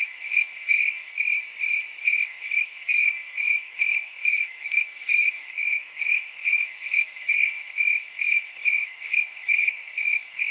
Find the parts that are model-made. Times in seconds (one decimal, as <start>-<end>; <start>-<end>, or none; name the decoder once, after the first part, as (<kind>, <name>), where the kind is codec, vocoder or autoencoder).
0.0-1.3 (codec, SNAC); 2.0-10.5